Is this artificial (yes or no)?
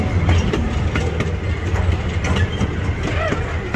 no